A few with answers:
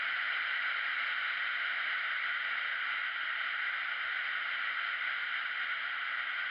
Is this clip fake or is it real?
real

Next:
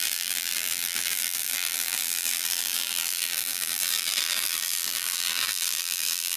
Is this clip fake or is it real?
fake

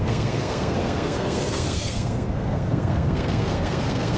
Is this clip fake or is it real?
fake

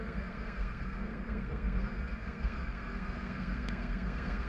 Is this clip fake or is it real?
fake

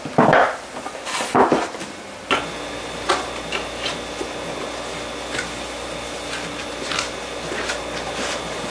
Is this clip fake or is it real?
real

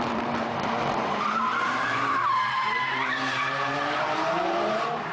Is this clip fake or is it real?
fake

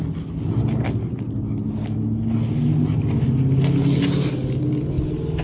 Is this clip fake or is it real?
real